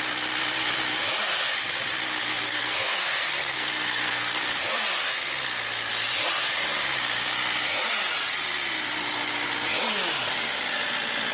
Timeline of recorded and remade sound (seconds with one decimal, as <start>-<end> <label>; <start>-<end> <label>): 0.0-2.3 recorded; 2.3-4.7 remade; 4.7-11.3 recorded